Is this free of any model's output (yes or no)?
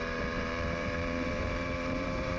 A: no